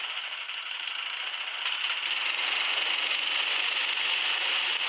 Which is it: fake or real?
real